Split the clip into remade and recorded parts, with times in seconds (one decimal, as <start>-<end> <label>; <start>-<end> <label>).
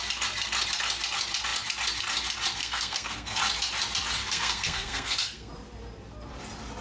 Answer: 0.0-2.6 recorded; 2.6-3.4 remade; 3.4-4.2 recorded; 4.2-5.5 remade; 5.5-6.8 recorded